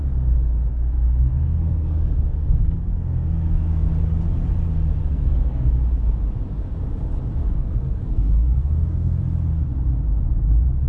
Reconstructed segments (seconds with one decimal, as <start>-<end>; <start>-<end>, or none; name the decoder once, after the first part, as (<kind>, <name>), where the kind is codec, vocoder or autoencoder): 0.7-3.9 (codec, SNAC); 5.0-5.7; 7.4-9.2